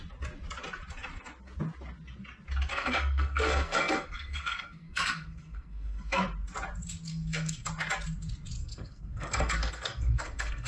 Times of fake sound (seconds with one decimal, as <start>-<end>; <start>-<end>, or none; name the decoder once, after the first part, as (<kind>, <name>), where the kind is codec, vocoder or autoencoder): 2.7-6.2 (codec, SNAC); 7.1-7.7; 8.6-10.7